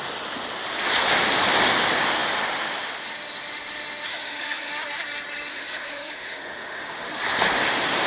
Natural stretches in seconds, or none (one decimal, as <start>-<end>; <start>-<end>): 0.0-4.1; 4.7-5.5; 7.1-8.1